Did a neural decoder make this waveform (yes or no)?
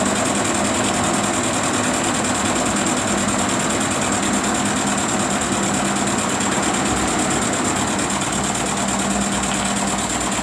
no